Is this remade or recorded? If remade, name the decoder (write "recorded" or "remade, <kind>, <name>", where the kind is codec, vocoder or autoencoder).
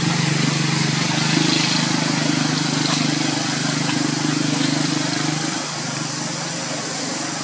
recorded